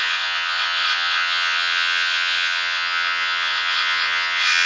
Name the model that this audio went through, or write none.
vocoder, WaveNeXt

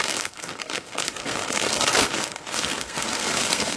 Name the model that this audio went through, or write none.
codec, SNAC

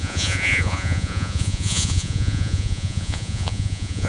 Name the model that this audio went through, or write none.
vocoder, Vocos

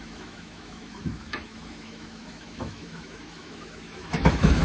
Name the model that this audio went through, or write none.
autoencoder, DAC-VAE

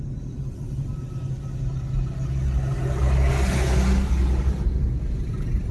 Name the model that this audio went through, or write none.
none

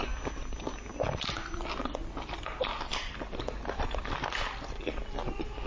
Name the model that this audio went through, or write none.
none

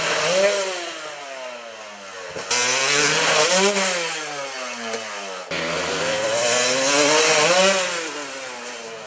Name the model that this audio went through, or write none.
none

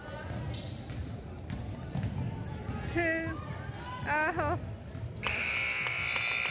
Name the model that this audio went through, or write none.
none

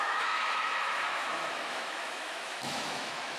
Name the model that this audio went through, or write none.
autoencoder, DAC-VAE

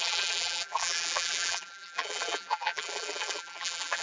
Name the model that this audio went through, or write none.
vocoder, BigVGAN v2